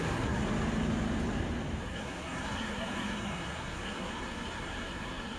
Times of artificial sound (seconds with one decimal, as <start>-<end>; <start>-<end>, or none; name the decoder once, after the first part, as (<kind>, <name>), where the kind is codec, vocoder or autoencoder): 0.0-0.4 (codec, SNAC); 1.8-5.4